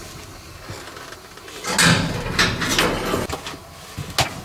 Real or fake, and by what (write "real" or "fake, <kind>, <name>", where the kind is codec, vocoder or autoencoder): real